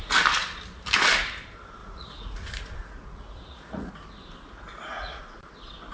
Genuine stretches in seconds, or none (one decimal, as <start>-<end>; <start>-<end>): 0.0-1.8; 3.9-4.7; 5.2-5.9